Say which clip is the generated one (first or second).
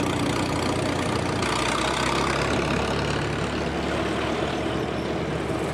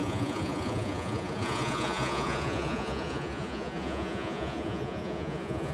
second